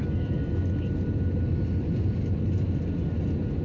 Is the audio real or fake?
real